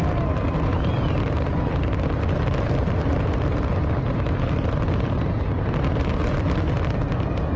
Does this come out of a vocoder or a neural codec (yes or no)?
no